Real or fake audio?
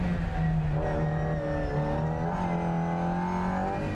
real